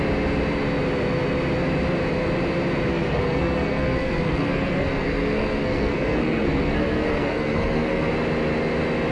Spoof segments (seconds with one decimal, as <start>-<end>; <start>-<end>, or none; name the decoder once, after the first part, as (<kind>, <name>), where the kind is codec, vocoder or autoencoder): 2.9-8.1 (codec, SNAC)